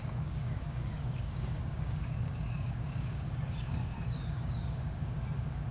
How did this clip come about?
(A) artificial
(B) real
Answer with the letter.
A